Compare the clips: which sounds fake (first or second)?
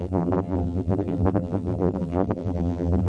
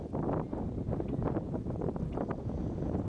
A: first